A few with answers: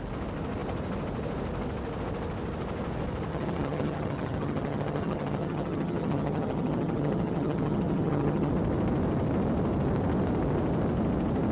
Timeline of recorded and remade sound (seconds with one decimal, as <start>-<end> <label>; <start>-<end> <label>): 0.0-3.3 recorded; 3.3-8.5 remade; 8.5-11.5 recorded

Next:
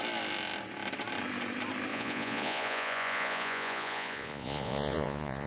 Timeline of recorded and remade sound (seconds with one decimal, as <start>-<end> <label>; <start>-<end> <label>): 0.0-1.9 recorded; 1.9-5.5 remade

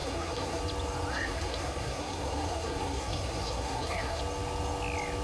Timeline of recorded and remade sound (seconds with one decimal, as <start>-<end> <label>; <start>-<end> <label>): 0.0-0.6 remade; 0.6-1.1 recorded; 1.1-4.2 remade; 4.2-5.2 recorded